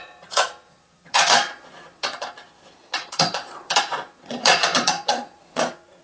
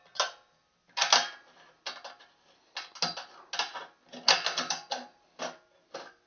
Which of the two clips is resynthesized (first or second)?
first